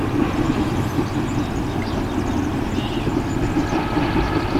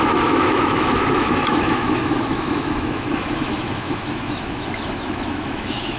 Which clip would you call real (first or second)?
first